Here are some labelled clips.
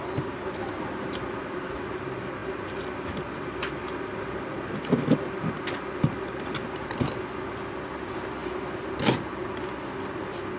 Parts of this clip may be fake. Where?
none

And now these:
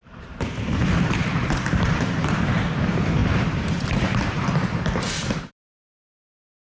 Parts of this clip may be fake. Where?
0.0-6.6 (vocoder, BigVGAN v2)

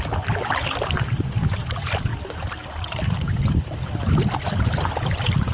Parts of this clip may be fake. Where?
none

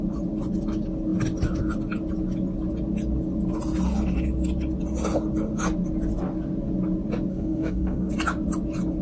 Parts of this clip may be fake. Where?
7.3-8.1 (codec, DAC)

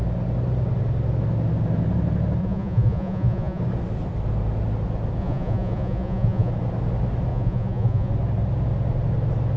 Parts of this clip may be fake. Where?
2.4-3.6 (vocoder, Vocos); 5.2-6.5; 7.3-8.1

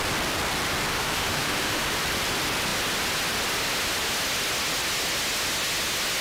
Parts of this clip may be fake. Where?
0.9-1.8 (autoencoder, DAC-VAE)

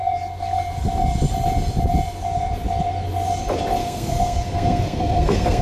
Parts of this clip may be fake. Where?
3.8-5.6 (codec, SNAC)